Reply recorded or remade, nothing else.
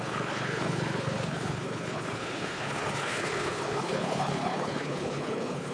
remade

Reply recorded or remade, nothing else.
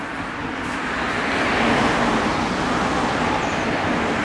recorded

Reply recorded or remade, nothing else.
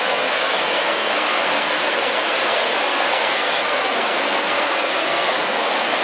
remade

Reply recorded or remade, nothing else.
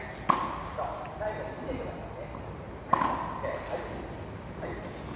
recorded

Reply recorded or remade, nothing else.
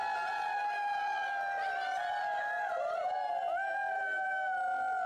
recorded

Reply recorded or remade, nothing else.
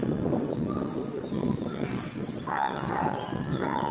remade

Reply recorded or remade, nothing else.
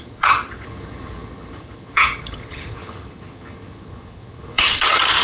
remade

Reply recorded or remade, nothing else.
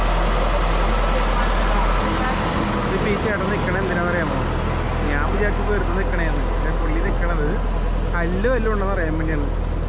recorded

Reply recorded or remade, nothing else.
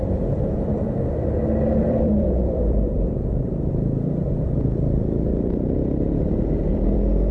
remade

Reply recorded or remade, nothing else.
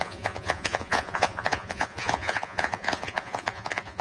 remade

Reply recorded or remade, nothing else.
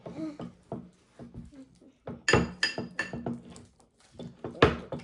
recorded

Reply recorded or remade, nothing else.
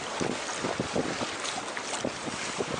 recorded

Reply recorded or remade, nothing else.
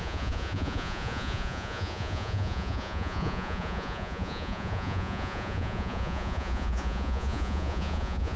remade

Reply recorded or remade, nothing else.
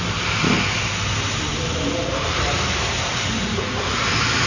recorded